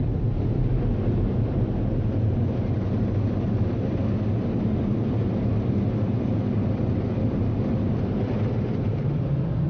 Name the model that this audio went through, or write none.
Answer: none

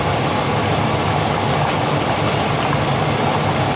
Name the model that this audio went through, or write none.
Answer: none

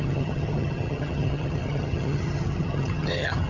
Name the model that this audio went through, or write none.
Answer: vocoder, HiFi-GAN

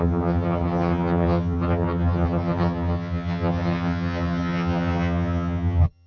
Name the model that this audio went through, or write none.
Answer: vocoder, HiFi-GAN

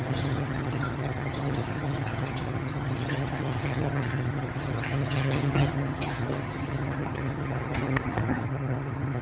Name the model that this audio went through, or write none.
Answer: vocoder, HiFi-GAN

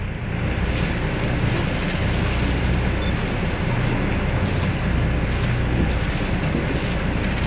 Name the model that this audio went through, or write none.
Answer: none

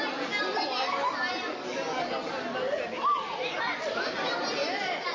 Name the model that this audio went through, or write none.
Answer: none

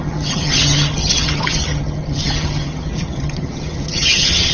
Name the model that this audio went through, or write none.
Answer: vocoder, HiFi-GAN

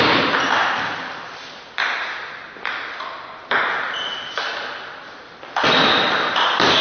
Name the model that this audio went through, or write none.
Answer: none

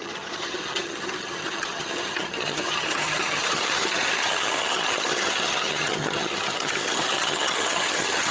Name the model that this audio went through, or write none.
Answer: vocoder, HiFi-GAN